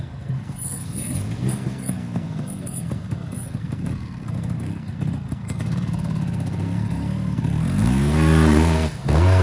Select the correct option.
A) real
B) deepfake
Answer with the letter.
B